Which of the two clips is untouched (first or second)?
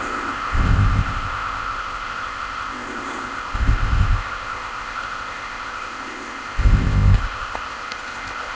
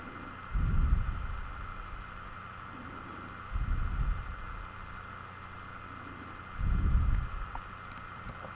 second